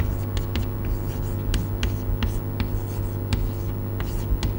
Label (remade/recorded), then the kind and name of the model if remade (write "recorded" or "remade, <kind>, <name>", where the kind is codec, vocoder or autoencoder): recorded